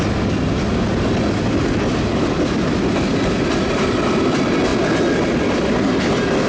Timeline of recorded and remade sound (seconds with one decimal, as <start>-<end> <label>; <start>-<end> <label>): 0.0-6.5 recorded